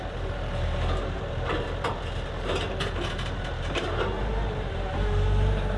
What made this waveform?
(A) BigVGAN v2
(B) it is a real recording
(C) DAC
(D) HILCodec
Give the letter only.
A